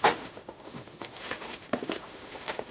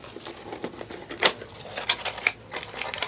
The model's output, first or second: first